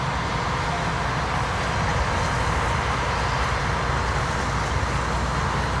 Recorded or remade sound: recorded